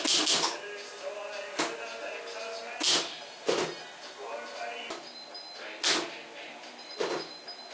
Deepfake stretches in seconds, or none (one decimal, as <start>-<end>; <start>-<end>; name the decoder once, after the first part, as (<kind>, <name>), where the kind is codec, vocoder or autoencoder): none